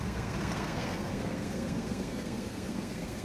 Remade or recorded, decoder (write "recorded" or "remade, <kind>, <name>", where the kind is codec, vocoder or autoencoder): remade, codec, SNAC